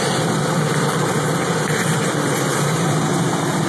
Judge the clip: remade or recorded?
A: recorded